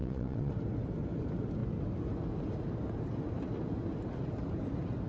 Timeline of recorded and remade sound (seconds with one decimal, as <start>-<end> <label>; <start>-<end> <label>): 0.0-0.5 remade; 0.5-5.1 recorded